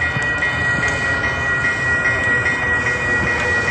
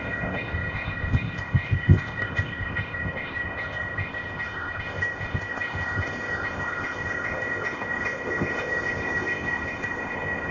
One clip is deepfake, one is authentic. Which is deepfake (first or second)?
second